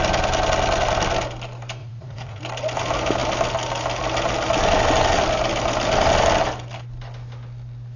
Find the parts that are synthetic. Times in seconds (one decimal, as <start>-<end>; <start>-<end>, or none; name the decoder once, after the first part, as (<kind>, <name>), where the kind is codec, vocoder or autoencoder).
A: 1.8-2.4 (vocoder, Vocos)